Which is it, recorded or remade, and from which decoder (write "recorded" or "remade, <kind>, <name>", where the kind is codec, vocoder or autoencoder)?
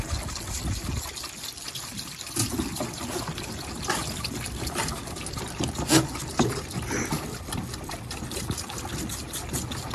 recorded